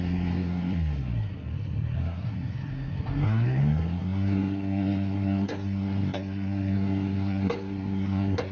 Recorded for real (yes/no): no